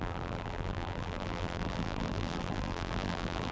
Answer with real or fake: fake